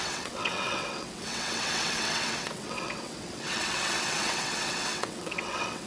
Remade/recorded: remade